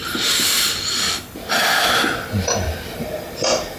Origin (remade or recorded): recorded